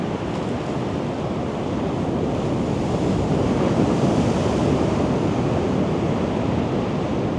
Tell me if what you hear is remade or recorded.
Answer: recorded